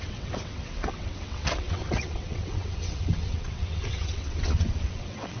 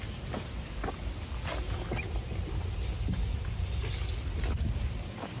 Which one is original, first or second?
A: second